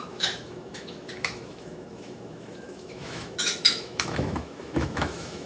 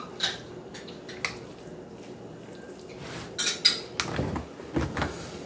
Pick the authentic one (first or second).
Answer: second